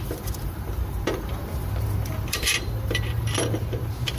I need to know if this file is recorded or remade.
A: remade